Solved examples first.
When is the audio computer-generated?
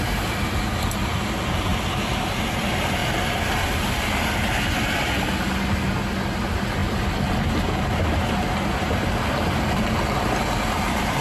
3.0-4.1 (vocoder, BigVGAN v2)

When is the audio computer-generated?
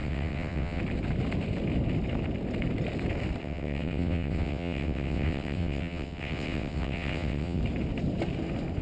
0.0-0.8 (vocoder, WaveNeXt); 3.4-7.6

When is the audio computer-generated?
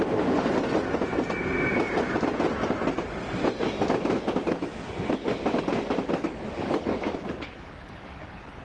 6.3-8.6 (codec, DAC)